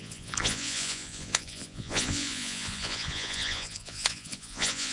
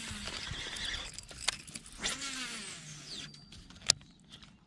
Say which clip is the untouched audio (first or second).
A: second